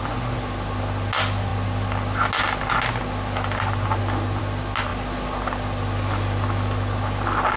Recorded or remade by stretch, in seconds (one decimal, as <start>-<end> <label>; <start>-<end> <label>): 0.0-7.6 recorded